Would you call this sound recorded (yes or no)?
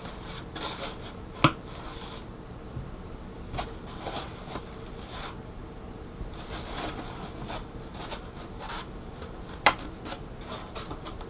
yes